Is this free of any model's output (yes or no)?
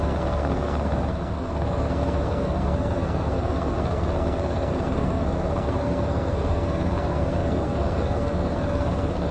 no